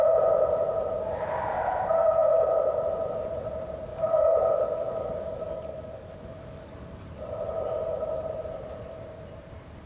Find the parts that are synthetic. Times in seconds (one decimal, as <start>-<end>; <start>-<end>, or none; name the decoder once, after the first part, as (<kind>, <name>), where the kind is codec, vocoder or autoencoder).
3.9-7.0 (codec, DAC)

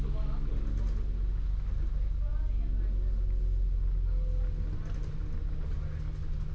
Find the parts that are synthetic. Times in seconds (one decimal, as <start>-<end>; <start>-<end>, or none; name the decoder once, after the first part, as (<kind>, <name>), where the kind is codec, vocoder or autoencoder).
none

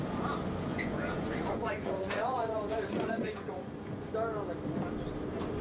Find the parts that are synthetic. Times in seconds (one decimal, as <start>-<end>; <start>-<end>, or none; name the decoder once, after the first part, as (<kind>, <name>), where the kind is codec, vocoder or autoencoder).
0.7-4.1 (vocoder, Vocos)

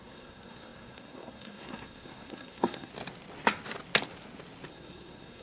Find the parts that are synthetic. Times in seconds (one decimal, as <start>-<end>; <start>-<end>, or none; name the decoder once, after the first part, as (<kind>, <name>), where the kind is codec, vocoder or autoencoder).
0.0-2.9 (codec, SNAC); 4.7-5.4

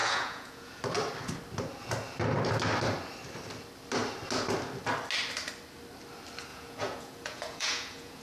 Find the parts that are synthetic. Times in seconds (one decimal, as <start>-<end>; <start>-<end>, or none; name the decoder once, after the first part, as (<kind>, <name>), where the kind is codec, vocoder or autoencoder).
0.0-0.8 (vocoder, Vocos); 6.5-8.2

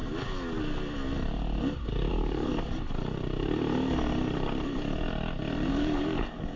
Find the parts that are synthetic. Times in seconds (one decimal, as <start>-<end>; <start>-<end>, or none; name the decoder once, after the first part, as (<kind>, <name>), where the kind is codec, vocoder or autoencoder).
2.1-2.5 (codec, DAC); 5.7-6.6